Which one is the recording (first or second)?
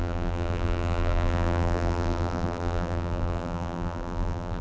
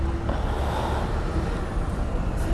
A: second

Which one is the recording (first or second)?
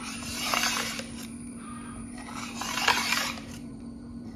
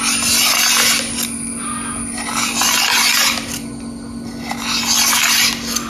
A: second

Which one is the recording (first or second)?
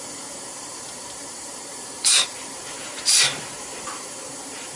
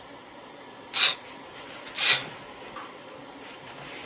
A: second